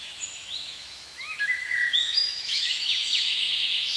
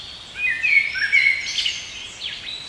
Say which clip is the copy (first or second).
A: first